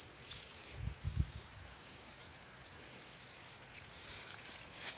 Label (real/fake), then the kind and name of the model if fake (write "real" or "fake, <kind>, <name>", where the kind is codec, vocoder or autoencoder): fake, codec, DAC